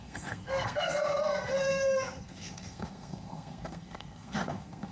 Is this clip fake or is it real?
fake